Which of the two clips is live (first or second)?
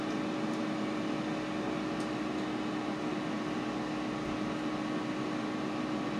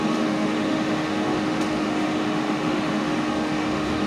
first